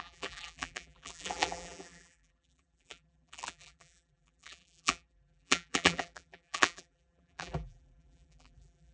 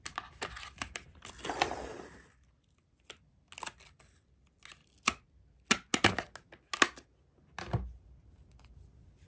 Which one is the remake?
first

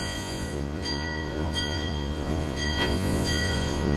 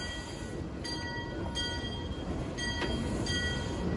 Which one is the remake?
first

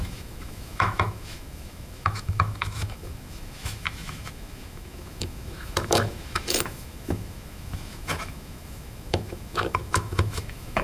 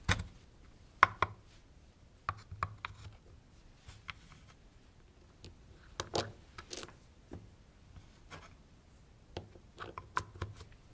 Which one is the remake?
first